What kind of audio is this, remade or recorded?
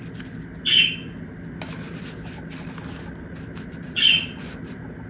recorded